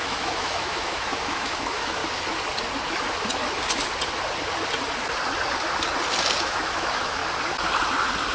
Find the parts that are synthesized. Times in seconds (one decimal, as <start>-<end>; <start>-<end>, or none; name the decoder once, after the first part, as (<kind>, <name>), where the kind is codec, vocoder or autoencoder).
0.0-2.0 (autoencoder, DAC-VAE); 6.4-7.2